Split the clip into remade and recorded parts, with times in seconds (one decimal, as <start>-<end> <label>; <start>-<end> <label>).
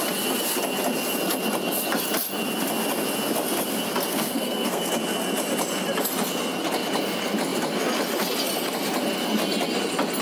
0.0-4.1 recorded; 4.1-4.9 remade; 4.9-10.2 recorded